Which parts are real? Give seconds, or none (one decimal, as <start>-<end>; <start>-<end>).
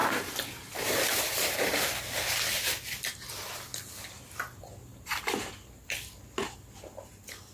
1.9-4.9; 5.5-7.5